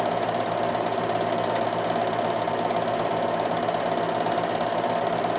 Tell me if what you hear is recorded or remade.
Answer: recorded